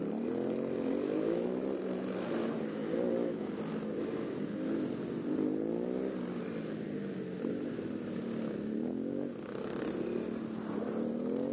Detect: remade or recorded recorded